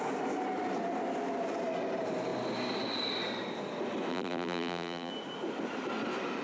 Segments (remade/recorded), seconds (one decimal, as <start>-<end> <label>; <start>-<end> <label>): 0.0-4.1 recorded; 4.1-5.1 remade; 5.1-6.4 recorded